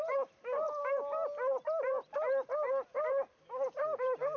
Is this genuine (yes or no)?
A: yes